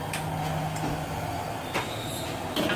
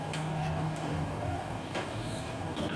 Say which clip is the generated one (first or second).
second